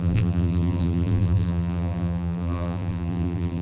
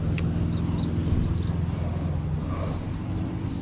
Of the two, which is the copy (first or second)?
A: first